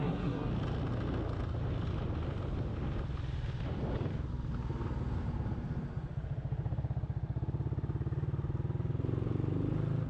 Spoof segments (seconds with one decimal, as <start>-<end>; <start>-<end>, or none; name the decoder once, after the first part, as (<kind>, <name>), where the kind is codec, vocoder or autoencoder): 0.0-0.5 (codec, SNAC)